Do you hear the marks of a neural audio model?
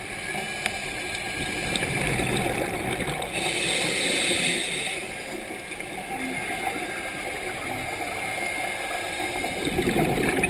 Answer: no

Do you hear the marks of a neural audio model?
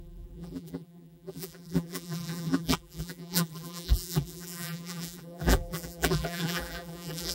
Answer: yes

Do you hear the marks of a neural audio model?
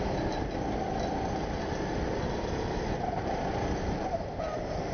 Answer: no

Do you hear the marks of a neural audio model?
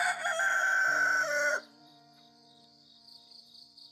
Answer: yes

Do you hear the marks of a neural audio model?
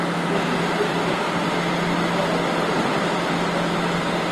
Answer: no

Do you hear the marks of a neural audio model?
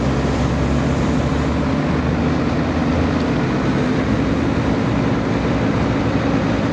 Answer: no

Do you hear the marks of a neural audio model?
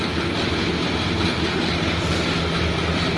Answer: no